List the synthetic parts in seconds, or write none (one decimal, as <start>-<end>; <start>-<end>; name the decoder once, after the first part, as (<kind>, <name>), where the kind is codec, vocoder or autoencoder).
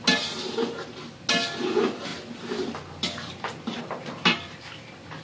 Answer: none